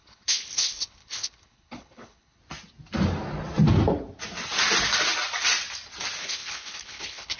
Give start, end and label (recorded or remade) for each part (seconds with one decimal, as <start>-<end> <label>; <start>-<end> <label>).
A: 0.0-2.4 remade; 2.4-6.2 recorded; 6.2-7.4 remade